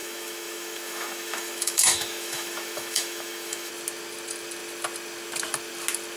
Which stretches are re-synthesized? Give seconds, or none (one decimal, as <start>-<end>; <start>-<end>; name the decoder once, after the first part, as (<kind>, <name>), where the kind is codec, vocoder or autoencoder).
0.0-3.7 (autoencoder, DAC-VAE)